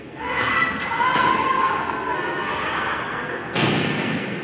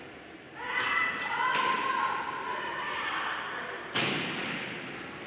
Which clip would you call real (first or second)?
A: second